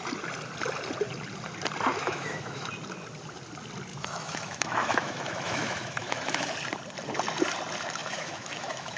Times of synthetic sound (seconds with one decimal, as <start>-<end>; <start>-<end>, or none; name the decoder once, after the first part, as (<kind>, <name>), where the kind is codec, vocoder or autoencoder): 1.9-2.7 (autoencoder, DAC-VAE); 3.9-6.4; 8.0-9.0